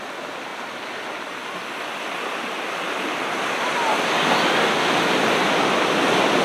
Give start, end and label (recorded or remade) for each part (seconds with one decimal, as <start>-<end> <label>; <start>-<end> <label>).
0.0-6.4 recorded

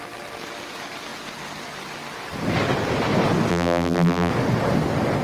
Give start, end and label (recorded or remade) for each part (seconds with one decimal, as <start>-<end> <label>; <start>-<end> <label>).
0.0-3.5 recorded; 3.5-4.3 remade; 4.3-5.2 recorded

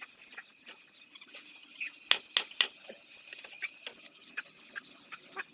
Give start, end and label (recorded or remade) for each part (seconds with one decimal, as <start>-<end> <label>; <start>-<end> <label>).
0.0-5.5 recorded

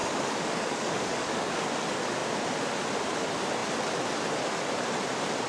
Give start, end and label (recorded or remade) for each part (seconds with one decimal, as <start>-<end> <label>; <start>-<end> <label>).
0.0-1.6 remade; 1.6-5.5 recorded

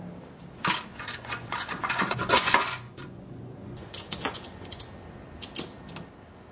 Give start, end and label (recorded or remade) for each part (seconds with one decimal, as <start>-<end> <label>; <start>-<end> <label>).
0.0-0.9 recorded; 0.9-4.8 remade; 4.8-6.5 recorded

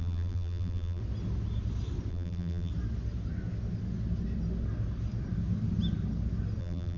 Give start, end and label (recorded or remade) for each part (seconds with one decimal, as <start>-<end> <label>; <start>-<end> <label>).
0.0-1.0 remade; 1.0-2.1 recorded; 2.1-2.7 remade; 2.7-6.6 recorded; 6.6-7.0 remade

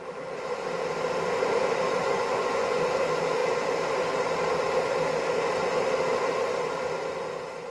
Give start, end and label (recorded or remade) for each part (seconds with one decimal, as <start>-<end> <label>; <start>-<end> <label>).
0.0-2.0 recorded; 2.0-2.9 remade; 2.9-7.7 recorded

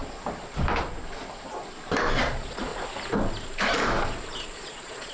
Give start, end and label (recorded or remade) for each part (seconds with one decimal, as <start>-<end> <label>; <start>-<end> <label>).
0.0-2.2 recorded; 2.2-2.7 remade; 2.7-4.5 recorded; 4.5-5.1 remade